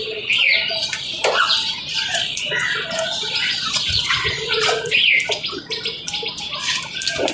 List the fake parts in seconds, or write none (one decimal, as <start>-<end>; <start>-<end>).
2.1-5.1